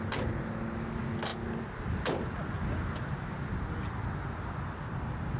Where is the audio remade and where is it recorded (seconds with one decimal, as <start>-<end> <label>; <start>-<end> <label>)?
0.0-5.4 recorded